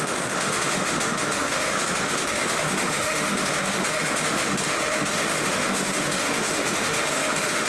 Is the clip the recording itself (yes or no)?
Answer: no